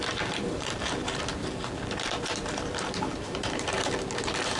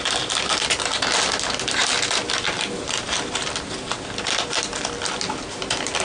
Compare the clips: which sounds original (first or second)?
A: second